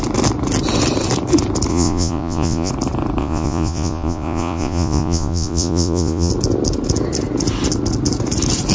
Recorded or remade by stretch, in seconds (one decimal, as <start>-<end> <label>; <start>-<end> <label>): 0.0-1.7 recorded; 1.7-2.7 remade; 2.7-3.2 recorded; 3.2-6.3 remade; 6.3-8.7 recorded